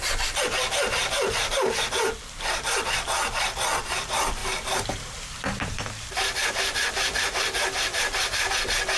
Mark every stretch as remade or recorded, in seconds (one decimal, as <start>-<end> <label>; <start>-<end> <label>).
0.0-4.4 recorded; 4.4-8.5 remade; 8.5-9.0 recorded